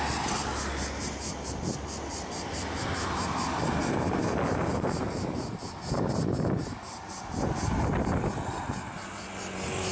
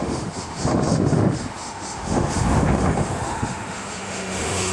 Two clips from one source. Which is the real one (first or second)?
first